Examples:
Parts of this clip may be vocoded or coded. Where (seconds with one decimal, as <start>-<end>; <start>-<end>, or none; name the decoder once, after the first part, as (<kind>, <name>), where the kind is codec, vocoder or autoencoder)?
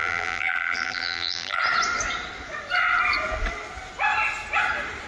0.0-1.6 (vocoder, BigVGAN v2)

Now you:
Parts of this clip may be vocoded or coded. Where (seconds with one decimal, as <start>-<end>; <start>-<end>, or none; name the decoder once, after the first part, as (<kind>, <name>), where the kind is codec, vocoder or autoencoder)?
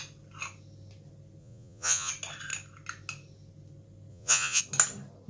1.4-2.1 (vocoder, Vocos); 4.1-4.6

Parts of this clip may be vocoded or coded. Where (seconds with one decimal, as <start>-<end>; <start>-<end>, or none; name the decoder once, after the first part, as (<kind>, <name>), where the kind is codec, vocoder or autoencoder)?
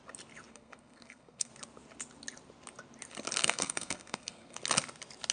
0.5-1.5 (codec, SNAC); 3.4-4.6